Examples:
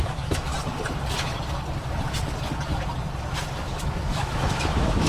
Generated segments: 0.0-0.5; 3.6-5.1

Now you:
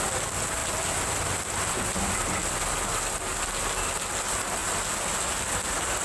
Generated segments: none

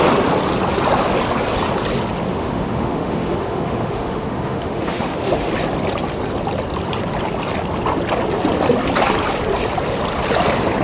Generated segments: 2.3-5.5

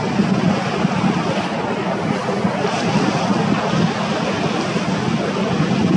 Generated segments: none

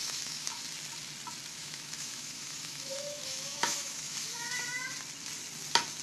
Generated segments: 0.0-0.6; 1.5-4.9

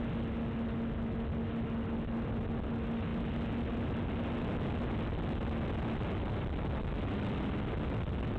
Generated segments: none

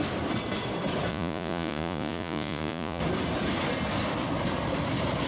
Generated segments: 1.1-3.0

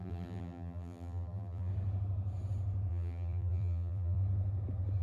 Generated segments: 0.0-1.7; 2.9-4.2